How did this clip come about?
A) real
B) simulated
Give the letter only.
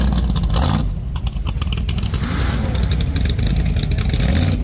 A